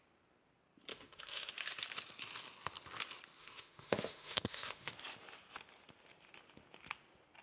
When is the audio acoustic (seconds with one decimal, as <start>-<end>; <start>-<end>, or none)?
0.0-0.9; 1.5-3.4; 4.9-7.4